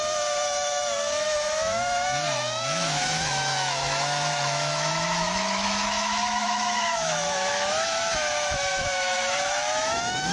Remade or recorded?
remade